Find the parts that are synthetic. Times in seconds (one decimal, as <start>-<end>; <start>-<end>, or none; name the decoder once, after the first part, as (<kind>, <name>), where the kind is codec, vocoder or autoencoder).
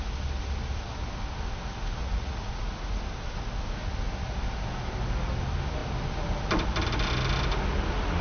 2.0-2.6 (vocoder, Vocos)